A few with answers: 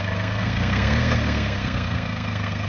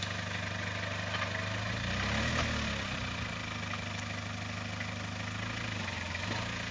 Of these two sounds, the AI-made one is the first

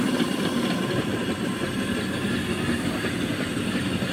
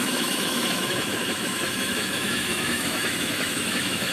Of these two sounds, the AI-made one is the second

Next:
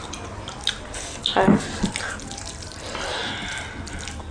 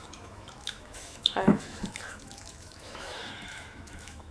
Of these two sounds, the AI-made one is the second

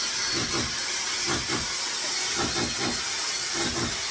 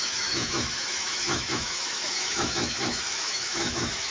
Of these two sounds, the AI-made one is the second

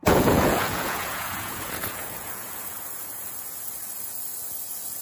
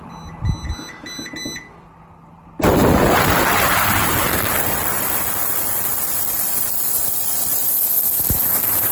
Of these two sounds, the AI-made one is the first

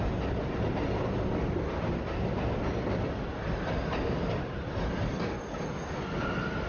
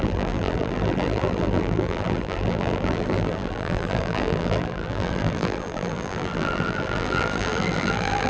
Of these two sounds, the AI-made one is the second